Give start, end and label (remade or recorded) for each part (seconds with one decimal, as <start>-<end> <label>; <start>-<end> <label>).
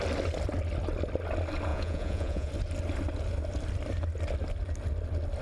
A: 0.0-1.7 recorded; 1.7-2.5 remade; 2.5-5.4 recorded